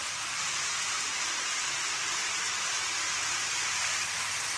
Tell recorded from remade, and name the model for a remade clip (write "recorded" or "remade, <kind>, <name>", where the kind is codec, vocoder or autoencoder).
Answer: recorded